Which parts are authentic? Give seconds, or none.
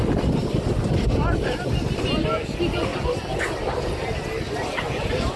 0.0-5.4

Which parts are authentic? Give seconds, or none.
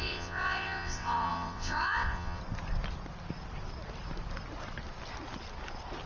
2.4-6.1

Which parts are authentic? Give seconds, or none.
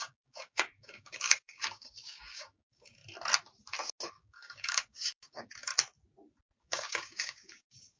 3.0-4.1; 5.7-6.6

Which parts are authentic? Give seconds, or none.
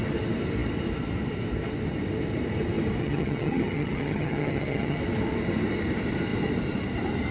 0.0-3.0; 5.0-7.3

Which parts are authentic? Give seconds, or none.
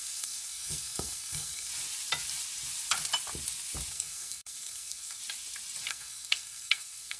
1.7-3.9; 5.2-5.9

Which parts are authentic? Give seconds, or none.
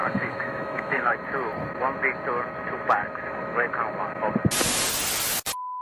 1.1-5.8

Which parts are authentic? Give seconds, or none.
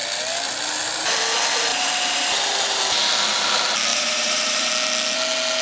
0.0-1.7; 2.8-3.9; 4.7-5.6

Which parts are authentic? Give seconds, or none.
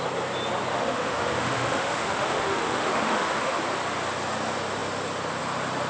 0.0-0.7; 3.6-5.9